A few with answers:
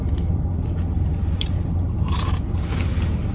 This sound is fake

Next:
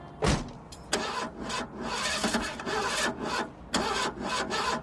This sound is real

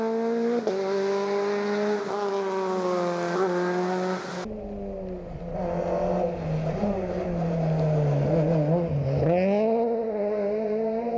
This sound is real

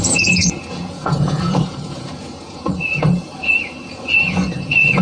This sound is fake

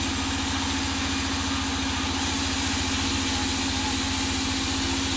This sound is real